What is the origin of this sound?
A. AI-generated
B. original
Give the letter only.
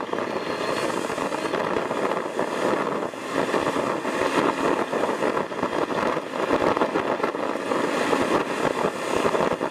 B